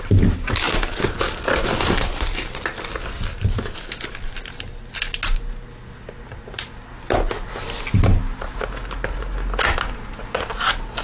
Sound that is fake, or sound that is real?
real